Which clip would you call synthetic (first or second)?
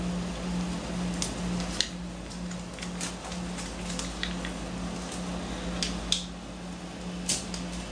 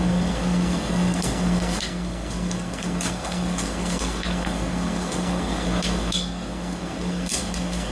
second